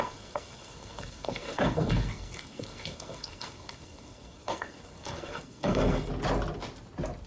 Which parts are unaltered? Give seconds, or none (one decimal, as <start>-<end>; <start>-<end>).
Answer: 6.1-7.3